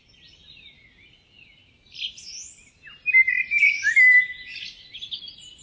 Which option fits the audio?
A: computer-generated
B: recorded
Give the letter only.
B